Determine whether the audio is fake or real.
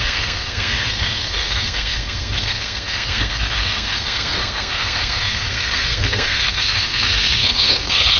fake